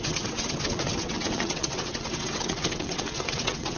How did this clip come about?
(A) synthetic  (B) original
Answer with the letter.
A